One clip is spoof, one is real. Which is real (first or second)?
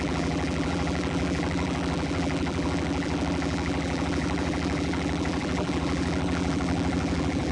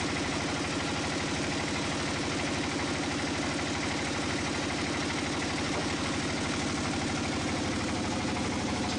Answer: second